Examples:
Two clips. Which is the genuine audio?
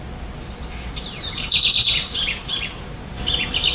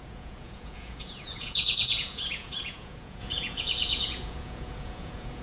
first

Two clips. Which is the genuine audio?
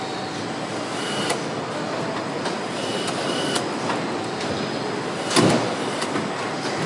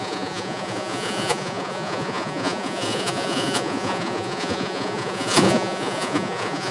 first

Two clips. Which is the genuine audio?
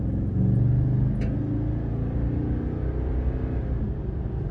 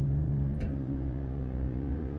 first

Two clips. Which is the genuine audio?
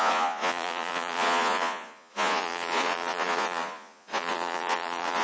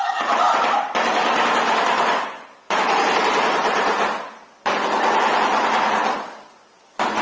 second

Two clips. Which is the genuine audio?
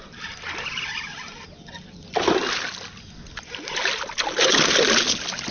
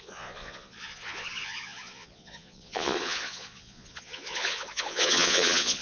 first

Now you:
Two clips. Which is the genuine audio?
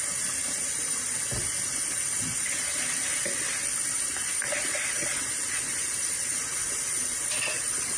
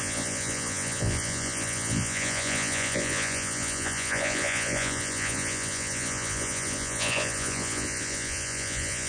first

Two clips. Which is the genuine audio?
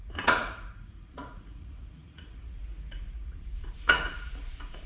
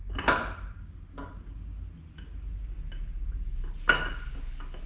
second